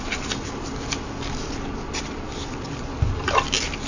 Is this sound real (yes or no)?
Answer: yes